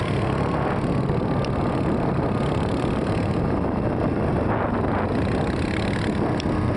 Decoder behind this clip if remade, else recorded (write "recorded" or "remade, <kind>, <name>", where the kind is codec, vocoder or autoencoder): remade, vocoder, BigVGAN v2